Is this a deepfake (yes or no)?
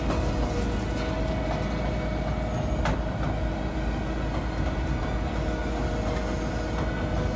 no